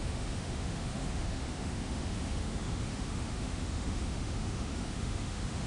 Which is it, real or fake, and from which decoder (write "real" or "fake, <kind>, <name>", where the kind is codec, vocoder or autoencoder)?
fake, autoencoder, DAC-VAE